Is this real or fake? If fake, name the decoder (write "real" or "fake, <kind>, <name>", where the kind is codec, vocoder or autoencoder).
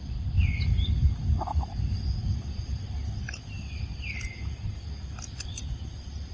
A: real